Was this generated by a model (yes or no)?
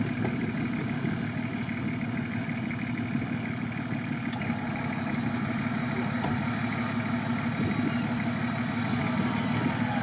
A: no